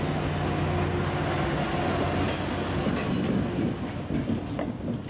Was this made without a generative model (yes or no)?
yes